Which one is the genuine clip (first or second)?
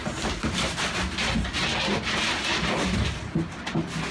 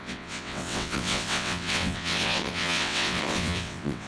first